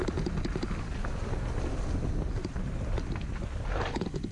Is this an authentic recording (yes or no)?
yes